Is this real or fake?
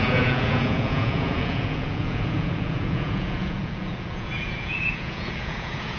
fake